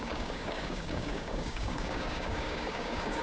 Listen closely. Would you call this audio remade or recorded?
remade